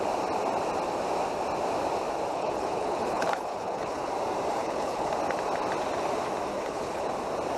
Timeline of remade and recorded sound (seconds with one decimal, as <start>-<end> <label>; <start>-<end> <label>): 0.0-2.3 recorded; 2.3-4.1 remade; 4.1-4.6 recorded; 4.6-5.1 remade; 5.1-6.5 recorded; 6.5-7.1 remade; 7.1-7.6 recorded